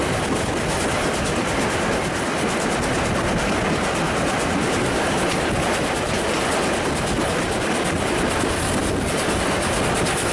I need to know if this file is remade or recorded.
recorded